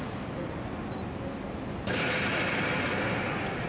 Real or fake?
real